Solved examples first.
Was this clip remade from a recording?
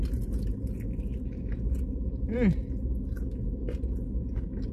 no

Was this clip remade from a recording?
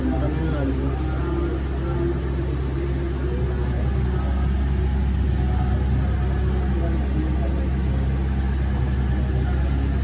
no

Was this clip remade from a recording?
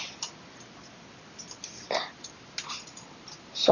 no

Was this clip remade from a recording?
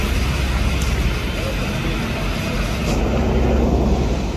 no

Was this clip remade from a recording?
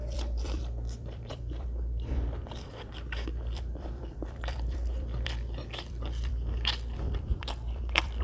yes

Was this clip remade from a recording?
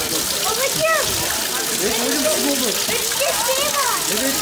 no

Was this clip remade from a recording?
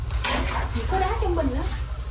no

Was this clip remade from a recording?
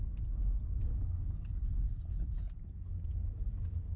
no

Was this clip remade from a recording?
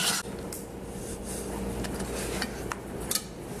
no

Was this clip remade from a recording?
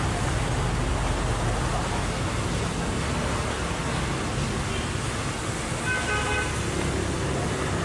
no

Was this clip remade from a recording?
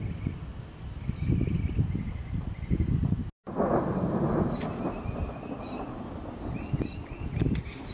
no